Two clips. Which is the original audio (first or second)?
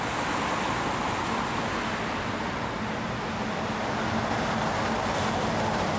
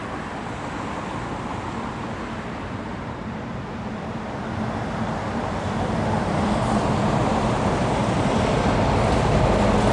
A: first